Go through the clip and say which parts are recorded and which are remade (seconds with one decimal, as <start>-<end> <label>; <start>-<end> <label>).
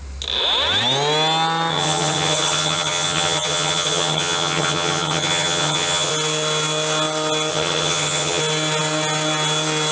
0.0-1.7 recorded; 1.7-6.1 remade; 6.1-7.5 recorded; 7.5-8.4 remade; 8.4-9.9 recorded